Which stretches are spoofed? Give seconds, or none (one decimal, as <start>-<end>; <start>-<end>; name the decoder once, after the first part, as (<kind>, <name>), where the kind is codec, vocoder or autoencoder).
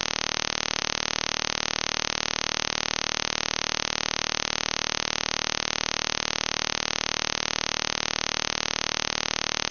none